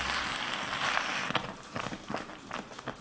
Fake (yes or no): no